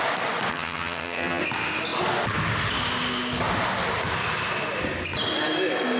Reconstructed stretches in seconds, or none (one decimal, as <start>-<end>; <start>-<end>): 0.5-1.4